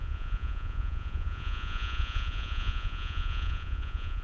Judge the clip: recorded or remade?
remade